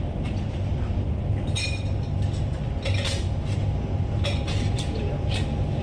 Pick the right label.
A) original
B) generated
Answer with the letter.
A